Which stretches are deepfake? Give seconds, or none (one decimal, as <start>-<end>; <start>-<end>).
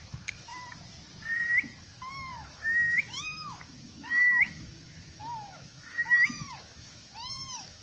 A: 0.0-0.5; 1.8-7.8